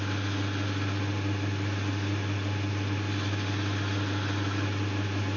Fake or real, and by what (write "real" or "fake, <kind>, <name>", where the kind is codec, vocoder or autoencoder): real